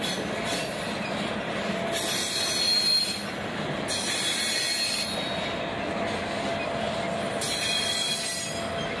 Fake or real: real